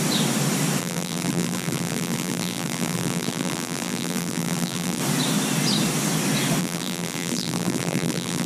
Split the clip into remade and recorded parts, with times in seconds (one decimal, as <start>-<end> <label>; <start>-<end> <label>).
0.0-0.8 recorded; 0.8-5.0 remade; 5.0-6.6 recorded; 6.6-8.5 remade